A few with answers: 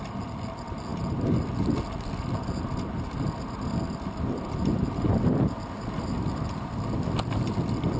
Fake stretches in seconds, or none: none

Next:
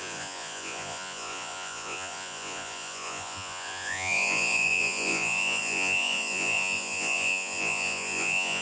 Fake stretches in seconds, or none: 0.0-8.6

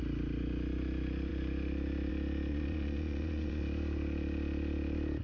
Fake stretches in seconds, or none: 2.5-3.6

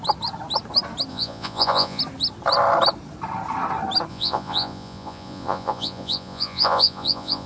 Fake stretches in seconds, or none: 1.1-2.0; 4.1-7.5

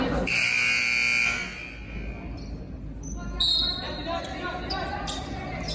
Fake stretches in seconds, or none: none

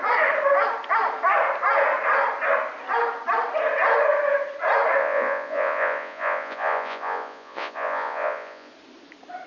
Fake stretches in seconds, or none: 5.0-8.7

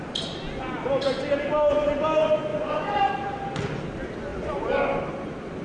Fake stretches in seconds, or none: 2.5-3.1